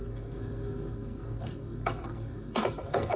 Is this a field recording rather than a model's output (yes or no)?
no